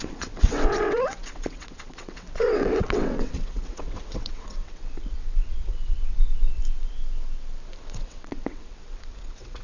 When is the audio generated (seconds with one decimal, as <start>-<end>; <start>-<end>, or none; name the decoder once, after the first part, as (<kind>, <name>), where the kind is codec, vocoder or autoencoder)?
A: 0.0-6.6 (vocoder, WaveNeXt); 7.8-9.6